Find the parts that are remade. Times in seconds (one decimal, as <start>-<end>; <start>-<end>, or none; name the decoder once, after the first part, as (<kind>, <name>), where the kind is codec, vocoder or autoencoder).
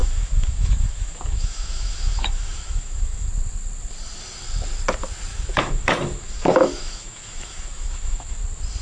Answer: 0.0-3.3 (autoencoder, DAC-VAE); 5.3-8.4